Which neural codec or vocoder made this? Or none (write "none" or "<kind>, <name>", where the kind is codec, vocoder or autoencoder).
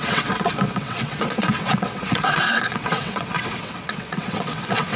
vocoder, WaveNeXt